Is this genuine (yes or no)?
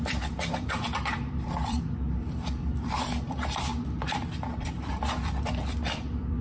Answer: no